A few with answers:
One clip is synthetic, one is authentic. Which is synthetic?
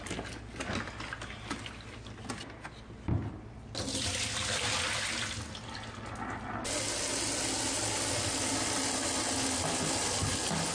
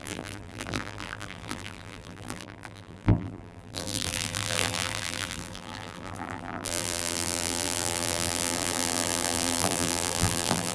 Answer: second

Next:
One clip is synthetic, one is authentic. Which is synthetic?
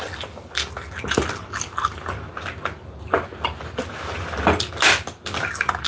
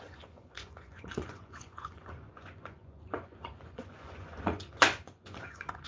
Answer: second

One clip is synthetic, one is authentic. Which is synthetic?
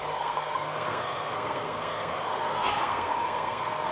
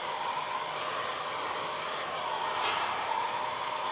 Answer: first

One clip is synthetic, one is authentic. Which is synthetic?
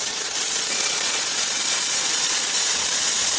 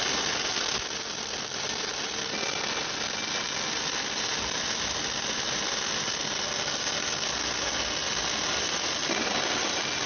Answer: first